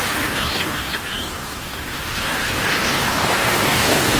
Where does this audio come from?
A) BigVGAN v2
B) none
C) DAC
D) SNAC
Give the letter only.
C